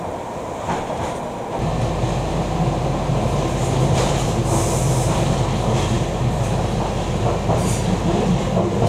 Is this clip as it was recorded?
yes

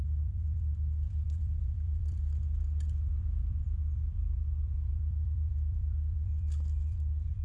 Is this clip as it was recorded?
no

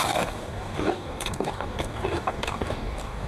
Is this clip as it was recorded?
no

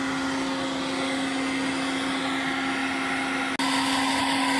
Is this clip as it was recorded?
yes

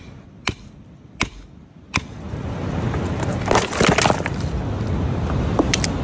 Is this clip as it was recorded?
yes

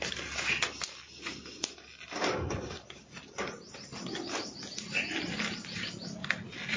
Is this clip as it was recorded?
yes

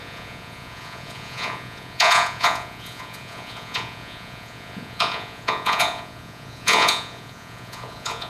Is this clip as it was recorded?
no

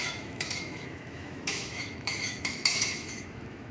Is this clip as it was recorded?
no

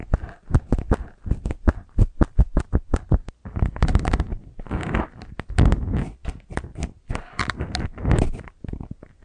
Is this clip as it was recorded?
yes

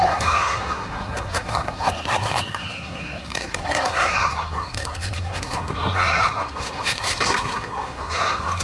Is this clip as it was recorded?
no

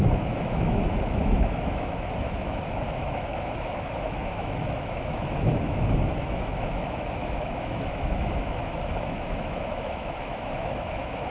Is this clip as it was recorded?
no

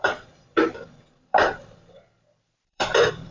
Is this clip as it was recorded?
no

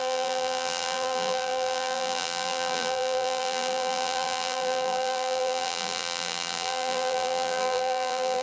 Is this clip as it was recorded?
no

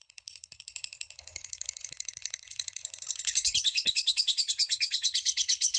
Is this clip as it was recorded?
no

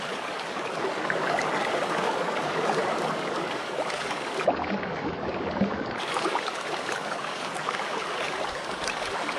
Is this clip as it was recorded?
no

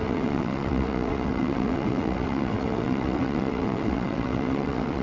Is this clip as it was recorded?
no